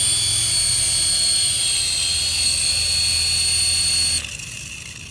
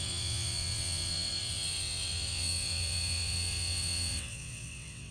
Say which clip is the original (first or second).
first